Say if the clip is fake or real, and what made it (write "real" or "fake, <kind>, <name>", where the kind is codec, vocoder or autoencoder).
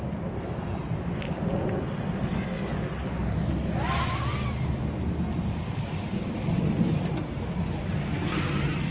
real